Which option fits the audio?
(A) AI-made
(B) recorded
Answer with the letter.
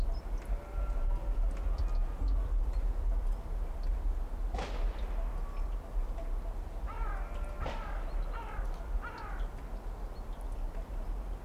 B